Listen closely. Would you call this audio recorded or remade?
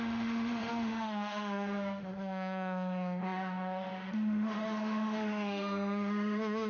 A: remade